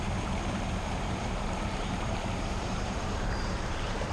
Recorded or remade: remade